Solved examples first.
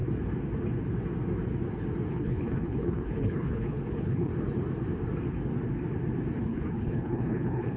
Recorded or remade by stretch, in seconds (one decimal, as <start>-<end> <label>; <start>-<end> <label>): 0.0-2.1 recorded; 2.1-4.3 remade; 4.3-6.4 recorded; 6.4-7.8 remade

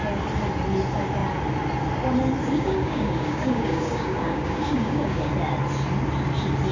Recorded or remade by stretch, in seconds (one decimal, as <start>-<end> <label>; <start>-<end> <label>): 0.0-2.4 recorded; 2.4-5.3 remade; 5.3-6.7 recorded

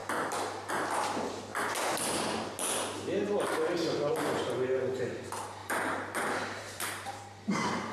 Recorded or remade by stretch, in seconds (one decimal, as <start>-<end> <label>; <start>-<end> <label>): 0.0-5.6 recorded; 5.6-7.2 remade; 7.2-7.9 recorded